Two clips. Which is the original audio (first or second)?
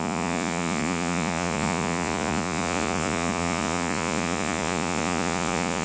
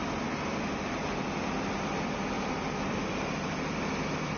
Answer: second